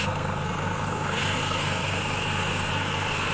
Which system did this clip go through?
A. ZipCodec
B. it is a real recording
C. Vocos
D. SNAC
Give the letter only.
D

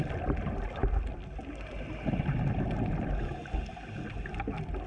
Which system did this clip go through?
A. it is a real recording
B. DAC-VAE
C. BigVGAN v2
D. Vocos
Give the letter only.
A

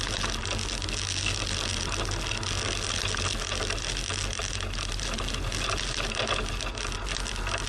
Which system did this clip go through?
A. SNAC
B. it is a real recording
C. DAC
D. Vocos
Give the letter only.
B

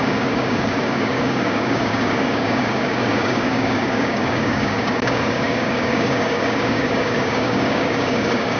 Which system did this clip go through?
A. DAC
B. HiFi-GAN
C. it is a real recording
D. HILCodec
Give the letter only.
A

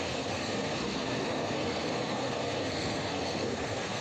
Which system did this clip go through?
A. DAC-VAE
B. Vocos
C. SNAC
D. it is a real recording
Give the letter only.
C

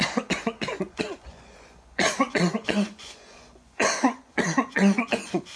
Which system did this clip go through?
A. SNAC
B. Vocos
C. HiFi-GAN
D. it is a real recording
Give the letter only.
B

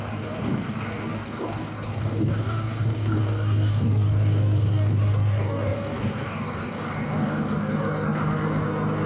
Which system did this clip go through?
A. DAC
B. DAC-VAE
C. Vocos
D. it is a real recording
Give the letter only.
A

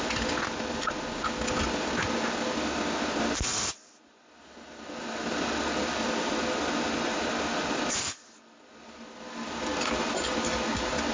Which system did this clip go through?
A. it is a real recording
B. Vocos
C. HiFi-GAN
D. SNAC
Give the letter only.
A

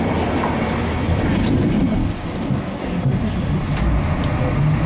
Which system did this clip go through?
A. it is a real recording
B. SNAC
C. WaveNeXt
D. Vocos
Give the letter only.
A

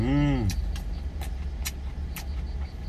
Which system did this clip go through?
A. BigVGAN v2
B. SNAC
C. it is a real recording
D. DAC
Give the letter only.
C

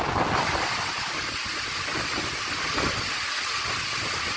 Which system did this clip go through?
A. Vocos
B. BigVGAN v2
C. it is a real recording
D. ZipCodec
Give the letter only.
C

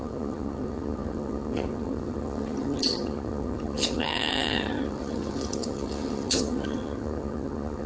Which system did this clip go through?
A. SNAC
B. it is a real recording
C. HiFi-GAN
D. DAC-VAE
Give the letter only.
C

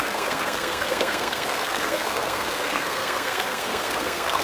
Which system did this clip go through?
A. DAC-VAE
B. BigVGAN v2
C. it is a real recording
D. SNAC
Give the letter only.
D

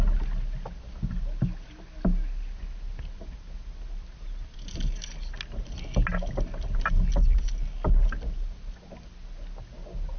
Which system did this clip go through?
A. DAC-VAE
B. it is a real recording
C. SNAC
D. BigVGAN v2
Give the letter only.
B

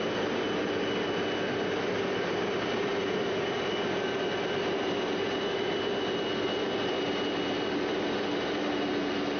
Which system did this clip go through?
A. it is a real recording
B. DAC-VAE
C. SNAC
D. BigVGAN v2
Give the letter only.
A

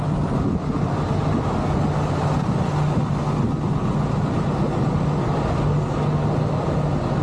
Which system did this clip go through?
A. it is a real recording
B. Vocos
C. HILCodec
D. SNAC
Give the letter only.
A